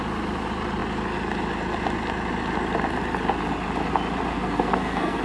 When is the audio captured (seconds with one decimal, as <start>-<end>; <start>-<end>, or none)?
0.0-4.3